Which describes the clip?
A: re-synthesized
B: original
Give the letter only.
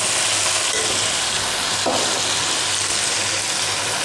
B